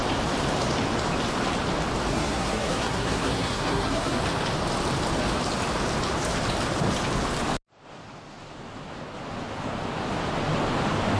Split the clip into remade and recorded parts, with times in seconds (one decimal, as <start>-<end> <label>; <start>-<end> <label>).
0.0-2.1 recorded; 2.1-4.2 remade; 4.2-11.2 recorded